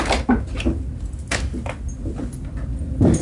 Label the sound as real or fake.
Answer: real